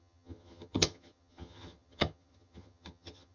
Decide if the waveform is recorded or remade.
remade